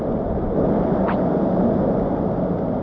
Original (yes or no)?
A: yes